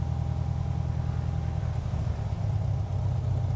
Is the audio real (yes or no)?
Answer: yes